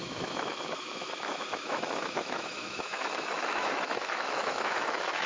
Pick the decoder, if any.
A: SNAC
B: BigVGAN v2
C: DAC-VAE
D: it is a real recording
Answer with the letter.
C